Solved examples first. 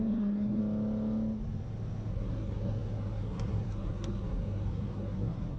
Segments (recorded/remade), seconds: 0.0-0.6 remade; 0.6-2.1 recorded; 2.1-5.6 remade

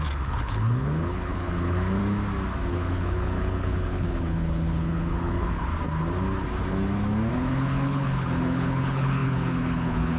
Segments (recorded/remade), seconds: 0.0-2.0 remade; 2.0-2.7 recorded; 2.7-5.7 remade; 5.7-7.3 recorded; 7.3-10.2 remade

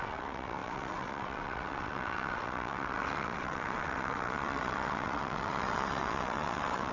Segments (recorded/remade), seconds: 0.0-6.9 remade

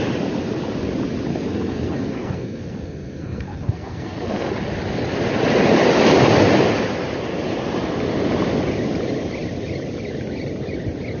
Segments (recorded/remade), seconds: 0.0-1.3 recorded; 1.3-4.5 remade; 4.5-11.2 recorded